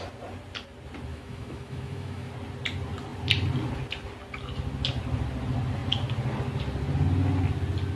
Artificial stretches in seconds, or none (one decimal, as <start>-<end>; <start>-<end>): 1.1-2.3